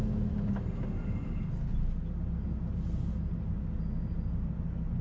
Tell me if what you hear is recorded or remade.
recorded